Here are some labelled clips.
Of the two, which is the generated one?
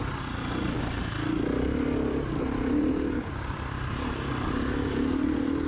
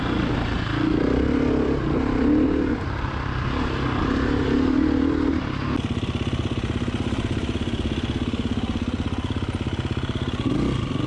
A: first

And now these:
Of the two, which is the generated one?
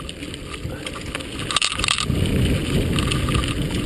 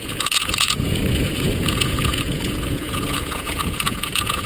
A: second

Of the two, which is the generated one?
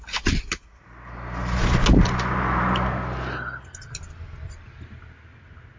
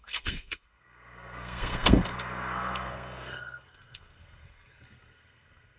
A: second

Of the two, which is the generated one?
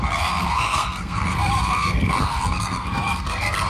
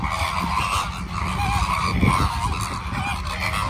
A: first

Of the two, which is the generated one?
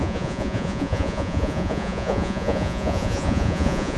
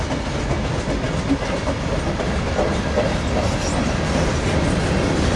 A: first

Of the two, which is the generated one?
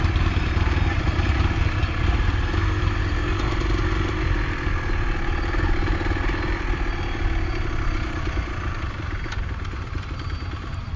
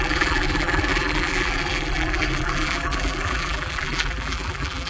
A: second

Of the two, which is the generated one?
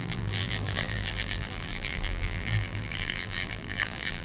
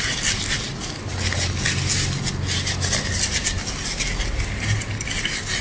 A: first